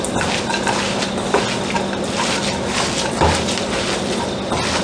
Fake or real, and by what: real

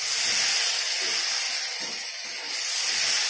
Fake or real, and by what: real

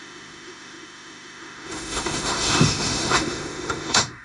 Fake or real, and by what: fake, autoencoder, DAC-VAE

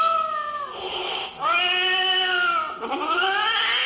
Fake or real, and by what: real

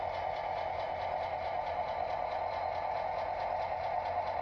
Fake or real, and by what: real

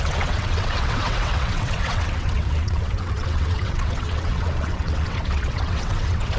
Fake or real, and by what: fake, vocoder, WaveNeXt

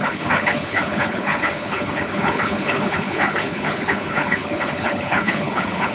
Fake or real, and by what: fake, codec, HILCodec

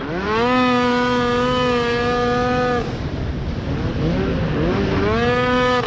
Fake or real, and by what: real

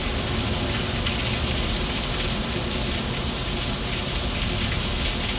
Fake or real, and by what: real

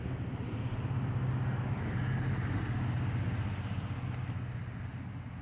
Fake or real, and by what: real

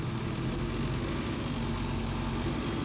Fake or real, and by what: real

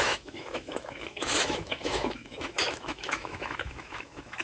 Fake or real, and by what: fake, autoencoder, DAC-VAE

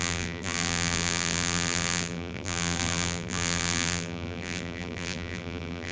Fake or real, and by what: fake, vocoder, BigVGAN v2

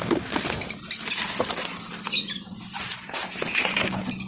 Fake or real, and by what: real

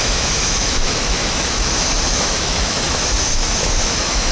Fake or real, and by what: fake, autoencoder, DAC-VAE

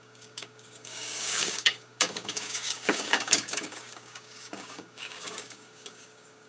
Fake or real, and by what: fake, codec, DAC